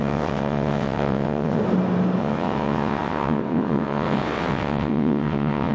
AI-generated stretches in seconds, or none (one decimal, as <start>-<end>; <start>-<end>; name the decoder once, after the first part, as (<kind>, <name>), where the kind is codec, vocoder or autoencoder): 0.0-1.6 (vocoder, WaveNeXt); 2.2-5.7